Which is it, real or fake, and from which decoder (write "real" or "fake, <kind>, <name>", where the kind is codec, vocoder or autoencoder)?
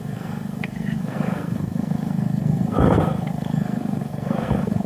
fake, codec, SNAC